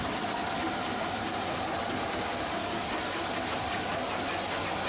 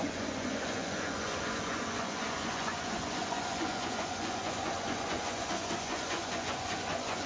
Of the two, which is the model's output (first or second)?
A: second